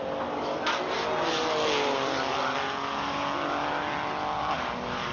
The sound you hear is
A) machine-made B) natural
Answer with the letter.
B